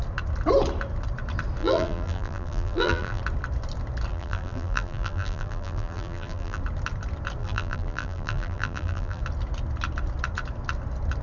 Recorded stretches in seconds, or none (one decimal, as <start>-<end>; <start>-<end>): 0.0-1.6; 3.2-4.1; 6.6-7.4; 9.2-11.2